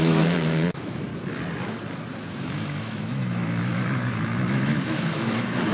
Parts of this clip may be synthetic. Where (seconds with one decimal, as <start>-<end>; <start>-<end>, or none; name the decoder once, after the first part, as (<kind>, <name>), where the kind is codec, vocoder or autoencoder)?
0.0-1.1 (autoencoder, DAC-VAE); 2.3-5.7